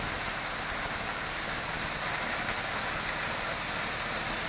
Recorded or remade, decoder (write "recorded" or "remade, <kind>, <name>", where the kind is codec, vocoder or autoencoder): recorded